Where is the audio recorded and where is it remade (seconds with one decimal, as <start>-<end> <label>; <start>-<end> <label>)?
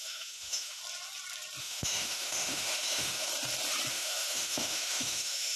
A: 0.0-0.8 remade; 0.8-1.6 recorded; 1.6-3.3 remade; 3.3-3.9 recorded; 3.9-5.6 remade